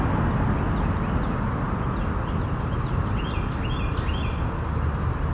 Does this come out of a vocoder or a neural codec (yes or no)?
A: no